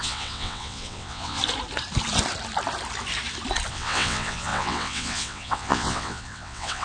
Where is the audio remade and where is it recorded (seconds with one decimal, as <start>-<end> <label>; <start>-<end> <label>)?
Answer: 0.0-1.4 remade; 1.4-3.7 recorded; 3.7-6.8 remade